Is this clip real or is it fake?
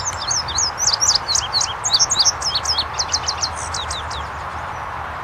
real